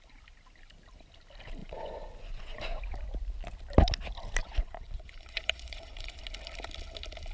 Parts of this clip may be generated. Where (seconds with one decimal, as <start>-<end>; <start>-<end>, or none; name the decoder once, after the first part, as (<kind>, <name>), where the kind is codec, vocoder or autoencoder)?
1.6-2.8 (vocoder, Vocos); 4.4-6.2

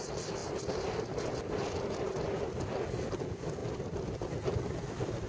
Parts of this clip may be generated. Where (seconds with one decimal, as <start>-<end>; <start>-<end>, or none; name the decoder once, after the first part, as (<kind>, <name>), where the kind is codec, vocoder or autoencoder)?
none

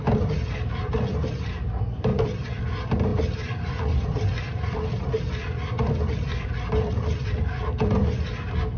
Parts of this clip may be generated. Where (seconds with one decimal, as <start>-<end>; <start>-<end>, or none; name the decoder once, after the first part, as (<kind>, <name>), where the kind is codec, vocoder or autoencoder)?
2.1-2.6 (vocoder, BigVGAN v2); 3.1-8.2

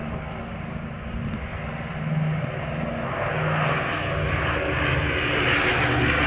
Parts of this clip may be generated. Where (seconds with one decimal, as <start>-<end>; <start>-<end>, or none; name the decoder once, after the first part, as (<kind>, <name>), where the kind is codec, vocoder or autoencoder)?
none

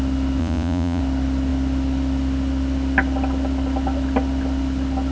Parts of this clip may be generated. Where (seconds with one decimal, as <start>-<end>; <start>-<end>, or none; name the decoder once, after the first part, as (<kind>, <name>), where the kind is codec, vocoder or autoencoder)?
0.4-1.0 (vocoder, Vocos)